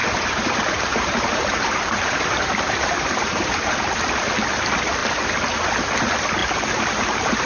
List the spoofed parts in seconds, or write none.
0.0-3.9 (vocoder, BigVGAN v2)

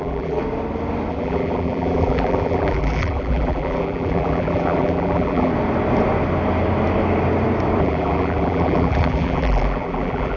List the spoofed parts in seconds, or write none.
0.0-0.4 (vocoder, BigVGAN v2); 1.1-5.5; 7.8-10.4

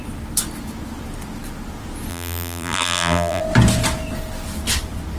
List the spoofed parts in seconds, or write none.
2.1-3.4 (vocoder, BigVGAN v2)

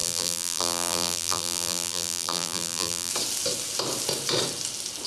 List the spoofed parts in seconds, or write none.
0.0-3.1 (vocoder, BigVGAN v2)

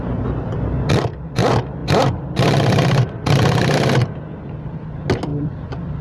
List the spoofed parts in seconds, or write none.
1.8-4.1 (vocoder, BigVGAN v2); 5.3-6.0

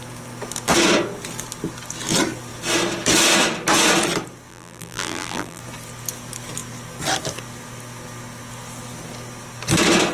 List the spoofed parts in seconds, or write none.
4.5-5.6 (vocoder, BigVGAN v2)